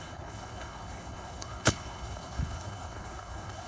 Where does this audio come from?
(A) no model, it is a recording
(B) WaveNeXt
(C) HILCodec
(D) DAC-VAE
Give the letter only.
C